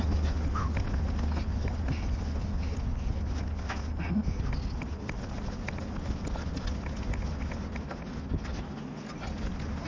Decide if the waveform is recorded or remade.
recorded